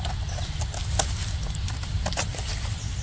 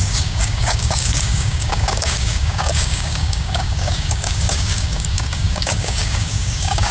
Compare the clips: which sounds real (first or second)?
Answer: first